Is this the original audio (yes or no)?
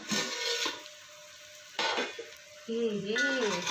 yes